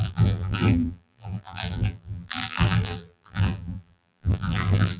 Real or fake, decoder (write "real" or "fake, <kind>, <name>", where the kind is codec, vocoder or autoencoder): fake, vocoder, BigVGAN v2